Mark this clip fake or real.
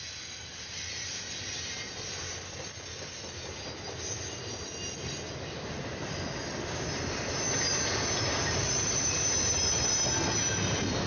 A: real